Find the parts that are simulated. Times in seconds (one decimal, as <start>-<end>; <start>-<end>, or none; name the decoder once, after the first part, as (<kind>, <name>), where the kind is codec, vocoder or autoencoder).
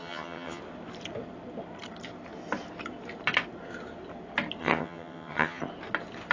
0.0-0.6 (vocoder, HiFi-GAN); 4.6-5.6